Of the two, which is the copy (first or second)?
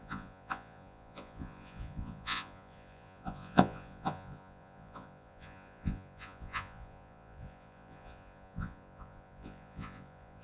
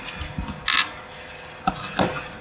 first